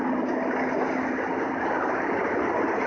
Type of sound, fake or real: real